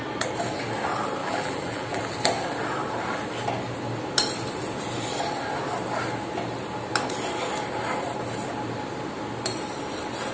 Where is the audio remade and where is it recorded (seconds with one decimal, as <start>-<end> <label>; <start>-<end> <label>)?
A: 0.0-1.2 recorded; 1.2-2.0 remade; 2.0-10.3 recorded